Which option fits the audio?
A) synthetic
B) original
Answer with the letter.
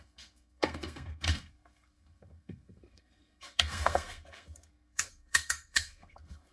A